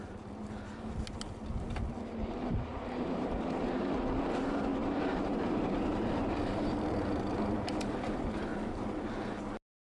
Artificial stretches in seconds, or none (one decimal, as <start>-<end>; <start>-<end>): 2.7-3.8; 4.8-7.6; 8.5-9.3